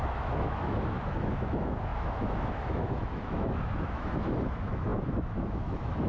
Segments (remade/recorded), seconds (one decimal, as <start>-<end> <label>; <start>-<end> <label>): 0.0-6.1 remade